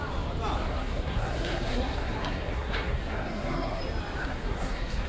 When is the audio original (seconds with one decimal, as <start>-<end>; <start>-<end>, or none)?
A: 0.0-0.7; 3.8-4.2